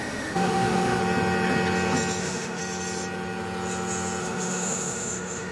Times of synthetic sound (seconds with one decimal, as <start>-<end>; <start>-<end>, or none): 0.0-1.0; 2.2-2.6; 4.2-5.5